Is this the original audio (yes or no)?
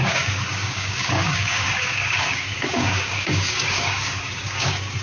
no